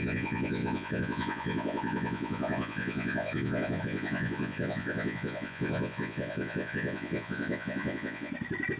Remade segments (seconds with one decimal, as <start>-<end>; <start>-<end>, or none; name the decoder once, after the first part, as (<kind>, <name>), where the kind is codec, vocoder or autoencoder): 0.0-8.3 (vocoder, Vocos)

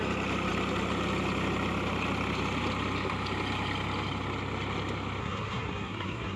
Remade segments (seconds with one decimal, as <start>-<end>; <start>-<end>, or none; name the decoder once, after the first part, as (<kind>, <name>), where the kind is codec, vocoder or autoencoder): 5.2-6.4 (codec, SNAC)

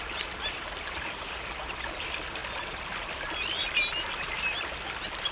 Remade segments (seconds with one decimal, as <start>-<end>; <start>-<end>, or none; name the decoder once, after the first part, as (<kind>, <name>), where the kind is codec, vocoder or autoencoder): none

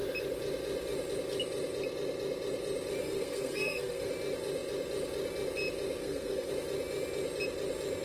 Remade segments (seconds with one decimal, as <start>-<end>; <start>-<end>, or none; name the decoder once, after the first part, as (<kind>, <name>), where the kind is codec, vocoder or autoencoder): 3.0-4.1 (codec, SNAC); 6.0-6.5